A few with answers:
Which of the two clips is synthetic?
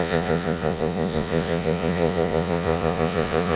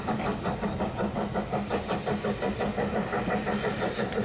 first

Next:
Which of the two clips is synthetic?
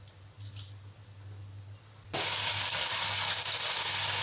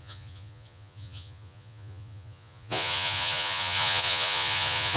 second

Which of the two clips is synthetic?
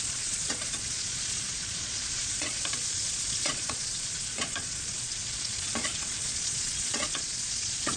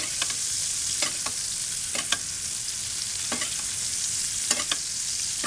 first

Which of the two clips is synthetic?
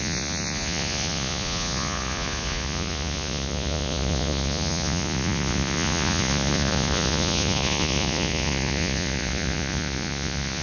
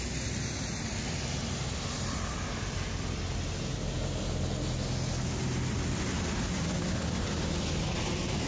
first